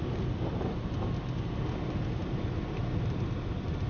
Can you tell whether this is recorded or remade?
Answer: recorded